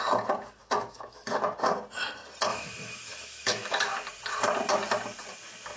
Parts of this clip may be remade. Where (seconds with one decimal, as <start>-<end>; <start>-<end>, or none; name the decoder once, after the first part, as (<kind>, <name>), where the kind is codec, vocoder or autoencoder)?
0.6-1.6 (autoencoder, DAC-VAE); 2.5-3.8

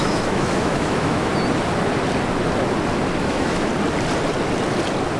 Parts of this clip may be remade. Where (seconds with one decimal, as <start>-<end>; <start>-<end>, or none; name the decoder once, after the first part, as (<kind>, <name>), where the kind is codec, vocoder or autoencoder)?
0.0-1.3 (autoencoder, DAC-VAE); 3.2-3.7

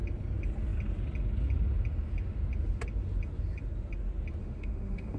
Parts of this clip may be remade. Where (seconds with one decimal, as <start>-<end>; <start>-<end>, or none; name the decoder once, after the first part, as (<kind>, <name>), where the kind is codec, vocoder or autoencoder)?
4.4-5.2 (autoencoder, DAC-VAE)

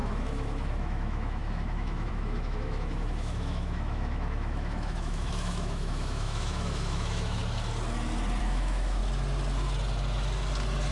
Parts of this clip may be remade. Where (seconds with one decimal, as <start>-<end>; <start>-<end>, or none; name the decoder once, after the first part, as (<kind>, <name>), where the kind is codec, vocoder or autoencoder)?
0.0-7.4 (autoencoder, DAC-VAE); 8.4-9.0